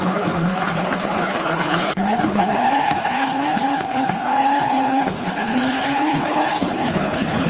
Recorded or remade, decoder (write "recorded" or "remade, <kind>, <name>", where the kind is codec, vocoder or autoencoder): remade, codec, HILCodec